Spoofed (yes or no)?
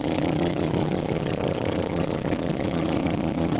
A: yes